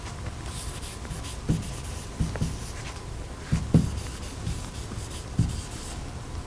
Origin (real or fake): real